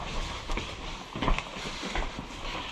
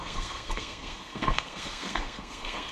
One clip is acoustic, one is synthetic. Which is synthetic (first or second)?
second